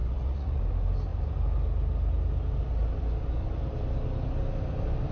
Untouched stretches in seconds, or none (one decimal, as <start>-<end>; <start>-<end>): 0.6-5.1